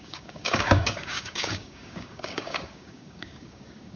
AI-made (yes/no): yes